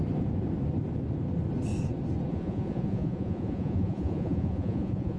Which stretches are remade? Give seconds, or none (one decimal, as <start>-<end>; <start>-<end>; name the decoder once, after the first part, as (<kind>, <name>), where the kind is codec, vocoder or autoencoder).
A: 2.3-5.2 (vocoder, Vocos)